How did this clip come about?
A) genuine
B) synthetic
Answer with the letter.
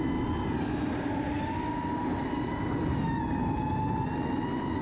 A